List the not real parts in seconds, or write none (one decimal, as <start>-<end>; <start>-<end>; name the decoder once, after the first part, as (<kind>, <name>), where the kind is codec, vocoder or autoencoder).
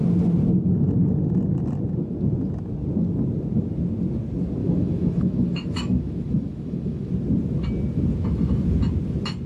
4.6-7.1 (autoencoder, DAC-VAE)